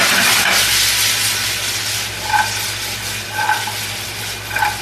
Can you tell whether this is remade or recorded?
recorded